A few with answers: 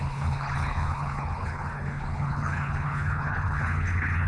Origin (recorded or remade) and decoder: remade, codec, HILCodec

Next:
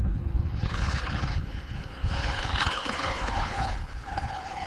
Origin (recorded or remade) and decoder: remade, codec, HILCodec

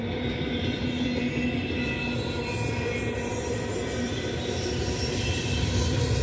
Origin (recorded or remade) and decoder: recorded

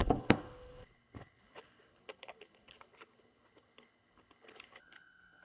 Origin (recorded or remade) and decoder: remade, codec, HILCodec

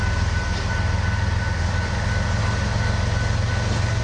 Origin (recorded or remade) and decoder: recorded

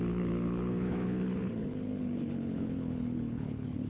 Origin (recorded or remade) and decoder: remade, codec, HILCodec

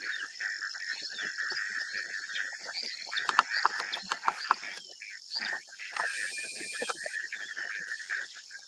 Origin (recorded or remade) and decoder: recorded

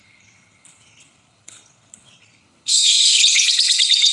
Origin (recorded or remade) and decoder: remade, codec, HILCodec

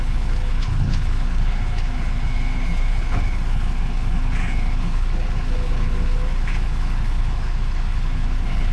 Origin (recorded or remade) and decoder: remade, codec, HILCodec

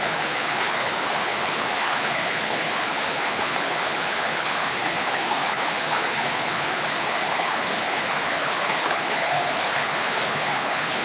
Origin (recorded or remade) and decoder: remade, codec, HILCodec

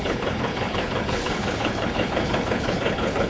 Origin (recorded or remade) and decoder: remade, codec, HILCodec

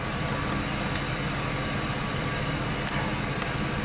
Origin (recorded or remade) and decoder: recorded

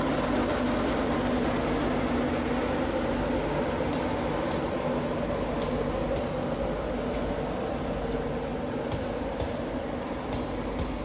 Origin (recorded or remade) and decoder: recorded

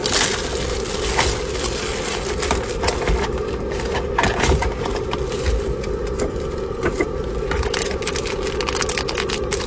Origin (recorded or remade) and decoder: recorded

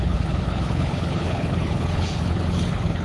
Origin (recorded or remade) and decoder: remade, codec, HILCodec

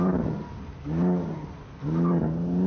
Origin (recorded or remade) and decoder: recorded